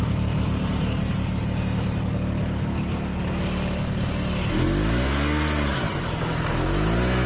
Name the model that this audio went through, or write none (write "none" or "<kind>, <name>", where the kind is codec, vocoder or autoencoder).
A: none